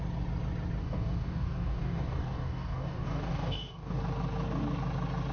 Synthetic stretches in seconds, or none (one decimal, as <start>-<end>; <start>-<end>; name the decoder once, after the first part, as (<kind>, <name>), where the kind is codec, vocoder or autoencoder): 0.8-4.0 (codec, DAC)